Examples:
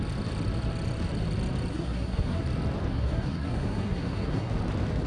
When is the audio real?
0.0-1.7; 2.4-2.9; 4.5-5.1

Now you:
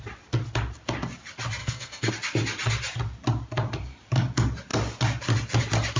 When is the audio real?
0.0-1.6; 2.1-6.0

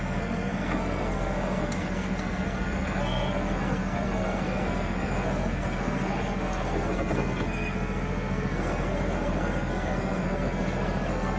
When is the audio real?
none